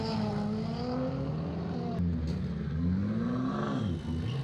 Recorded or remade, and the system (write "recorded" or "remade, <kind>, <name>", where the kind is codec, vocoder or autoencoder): recorded